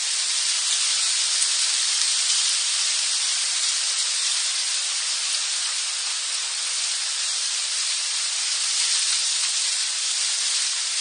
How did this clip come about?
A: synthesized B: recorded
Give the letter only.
B